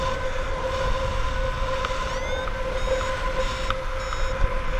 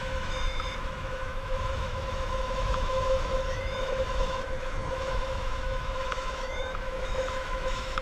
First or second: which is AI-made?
second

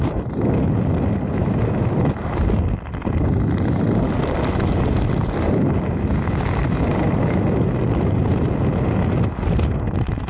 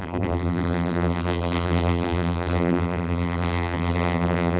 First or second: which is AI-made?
second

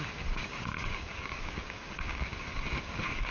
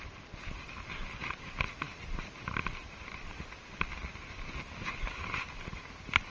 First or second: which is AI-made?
first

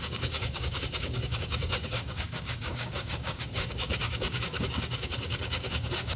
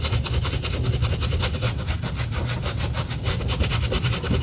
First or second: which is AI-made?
first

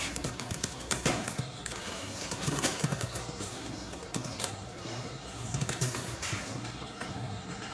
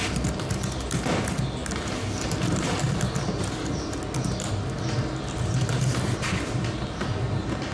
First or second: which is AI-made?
first